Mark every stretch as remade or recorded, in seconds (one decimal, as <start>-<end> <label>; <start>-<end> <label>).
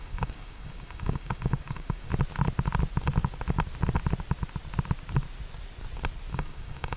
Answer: 0.0-2.1 remade; 2.1-6.3 recorded; 6.3-7.0 remade